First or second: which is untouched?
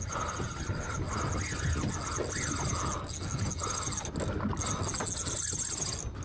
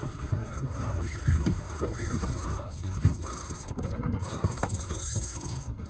first